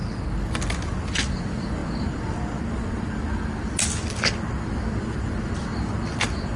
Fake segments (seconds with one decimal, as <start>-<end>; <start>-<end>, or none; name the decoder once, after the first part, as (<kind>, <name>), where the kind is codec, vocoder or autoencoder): none

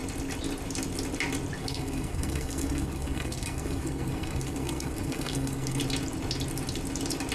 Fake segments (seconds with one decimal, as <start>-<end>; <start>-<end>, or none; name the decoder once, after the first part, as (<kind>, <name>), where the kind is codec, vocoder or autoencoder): 1.6-5.8 (codec, SNAC)

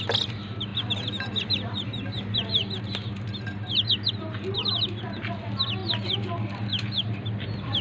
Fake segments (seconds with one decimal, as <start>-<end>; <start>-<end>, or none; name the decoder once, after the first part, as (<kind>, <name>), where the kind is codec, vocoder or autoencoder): none

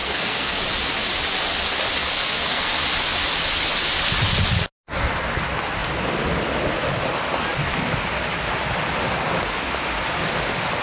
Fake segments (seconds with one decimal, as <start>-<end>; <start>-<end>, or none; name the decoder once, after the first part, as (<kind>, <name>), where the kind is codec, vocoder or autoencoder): 0.0-0.6 (codec, SNAC); 2.0-2.8

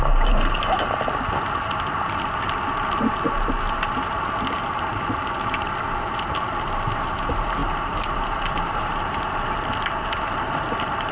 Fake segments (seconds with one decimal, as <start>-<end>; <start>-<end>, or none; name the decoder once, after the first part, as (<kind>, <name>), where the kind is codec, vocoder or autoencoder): none